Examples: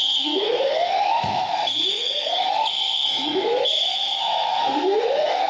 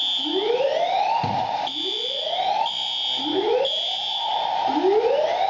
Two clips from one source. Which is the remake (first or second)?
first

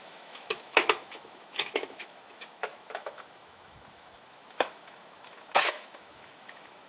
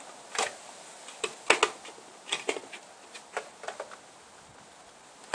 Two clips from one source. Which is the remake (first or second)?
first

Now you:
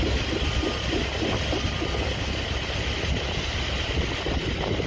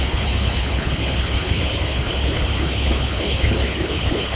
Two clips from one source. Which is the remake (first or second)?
second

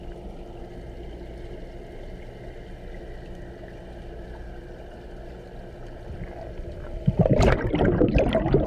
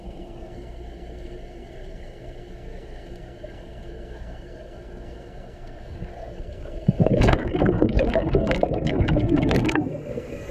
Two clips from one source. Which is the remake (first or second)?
second